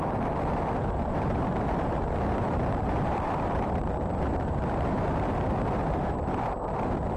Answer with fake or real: fake